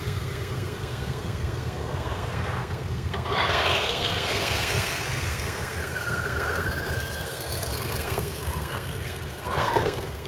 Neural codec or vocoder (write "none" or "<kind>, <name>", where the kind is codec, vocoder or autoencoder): codec, SNAC